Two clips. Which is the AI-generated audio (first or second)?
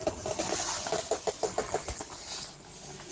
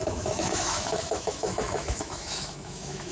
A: second